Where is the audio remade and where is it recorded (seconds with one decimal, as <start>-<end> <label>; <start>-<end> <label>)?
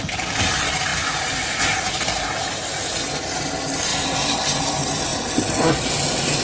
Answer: 0.0-6.4 recorded